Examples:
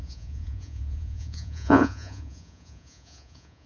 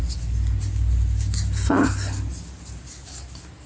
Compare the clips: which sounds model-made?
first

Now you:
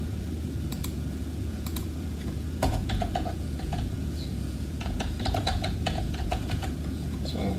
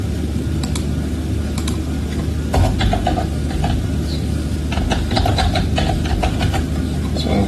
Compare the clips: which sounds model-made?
first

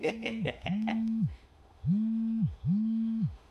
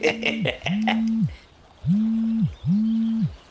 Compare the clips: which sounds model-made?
first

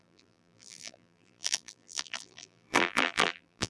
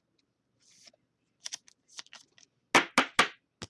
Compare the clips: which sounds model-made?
first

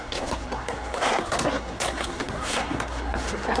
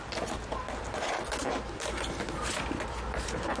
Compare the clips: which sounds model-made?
first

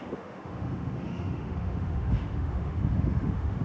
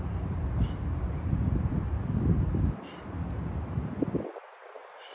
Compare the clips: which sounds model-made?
first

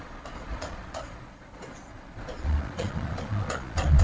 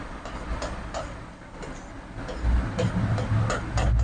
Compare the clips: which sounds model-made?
first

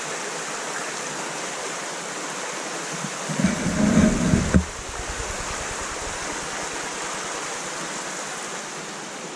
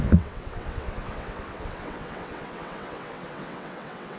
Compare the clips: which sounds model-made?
second